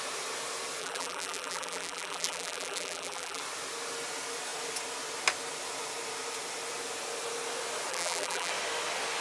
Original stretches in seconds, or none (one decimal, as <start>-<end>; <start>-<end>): 0.0-0.8; 3.4-7.9; 8.5-9.2